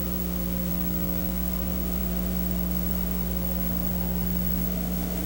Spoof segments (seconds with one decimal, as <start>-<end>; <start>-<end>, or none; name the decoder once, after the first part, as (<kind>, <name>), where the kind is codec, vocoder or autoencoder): 0.0-0.7 (autoencoder, DAC-VAE); 1.3-5.3